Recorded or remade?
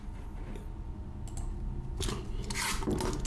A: recorded